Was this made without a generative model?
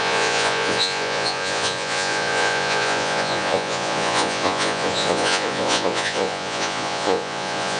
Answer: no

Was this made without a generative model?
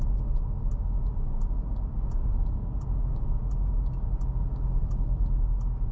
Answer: yes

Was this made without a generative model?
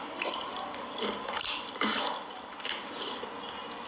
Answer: yes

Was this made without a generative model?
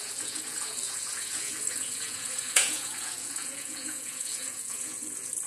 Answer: no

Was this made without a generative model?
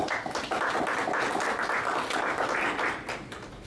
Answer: yes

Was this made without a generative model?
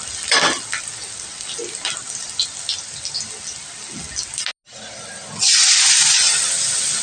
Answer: yes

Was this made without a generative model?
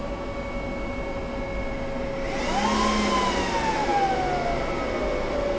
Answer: yes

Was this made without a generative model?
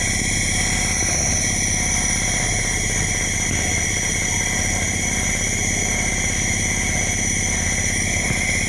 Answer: yes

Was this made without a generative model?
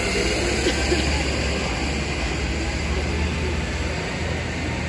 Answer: yes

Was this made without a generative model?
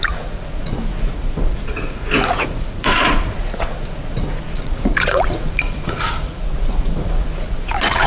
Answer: no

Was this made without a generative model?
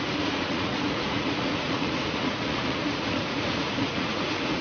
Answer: no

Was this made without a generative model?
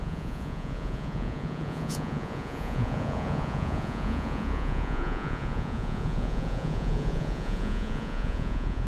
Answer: no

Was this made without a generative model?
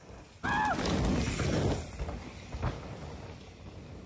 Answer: yes